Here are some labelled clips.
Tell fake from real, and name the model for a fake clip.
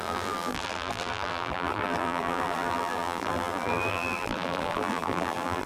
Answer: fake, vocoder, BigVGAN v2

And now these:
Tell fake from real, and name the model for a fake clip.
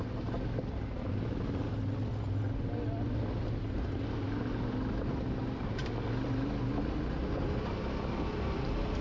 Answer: real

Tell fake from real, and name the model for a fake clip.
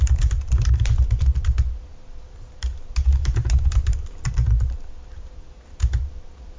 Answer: fake, vocoder, BigVGAN v2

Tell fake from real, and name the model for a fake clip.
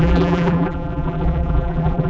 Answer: fake, vocoder, BigVGAN v2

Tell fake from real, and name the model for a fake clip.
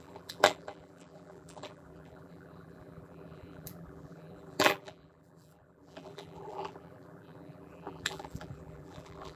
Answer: fake, vocoder, BigVGAN v2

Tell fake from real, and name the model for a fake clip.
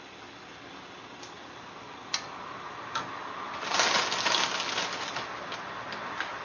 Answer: real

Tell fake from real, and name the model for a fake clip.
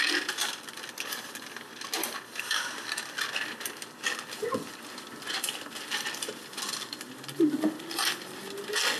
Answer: real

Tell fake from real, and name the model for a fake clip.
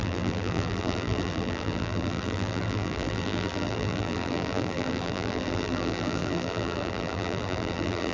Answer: fake, vocoder, BigVGAN v2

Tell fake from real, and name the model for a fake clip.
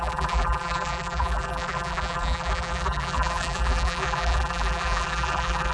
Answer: fake, vocoder, BigVGAN v2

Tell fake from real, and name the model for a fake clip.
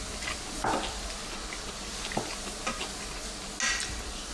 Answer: real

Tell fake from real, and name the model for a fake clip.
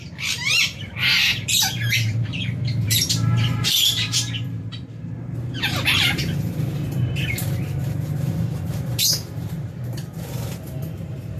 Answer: fake, vocoder, BigVGAN v2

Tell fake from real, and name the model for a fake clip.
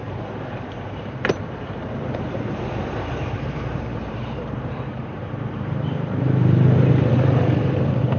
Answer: fake, vocoder, BigVGAN v2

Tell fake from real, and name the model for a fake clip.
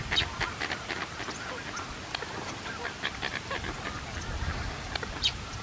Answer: real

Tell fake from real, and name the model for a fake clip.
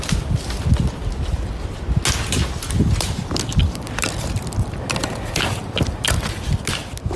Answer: real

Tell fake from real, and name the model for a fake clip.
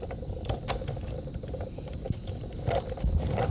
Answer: real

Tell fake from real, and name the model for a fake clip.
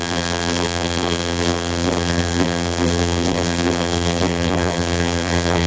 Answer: fake, vocoder, BigVGAN v2